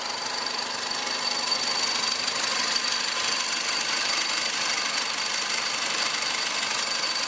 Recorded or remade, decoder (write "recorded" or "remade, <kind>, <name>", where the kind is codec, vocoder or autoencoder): recorded